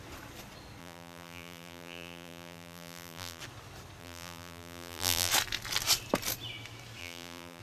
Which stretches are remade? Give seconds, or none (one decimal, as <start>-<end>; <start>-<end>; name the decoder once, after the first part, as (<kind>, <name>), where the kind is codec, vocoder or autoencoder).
0.8-3.4 (vocoder, BigVGAN v2); 4.0-5.3; 7.0-7.6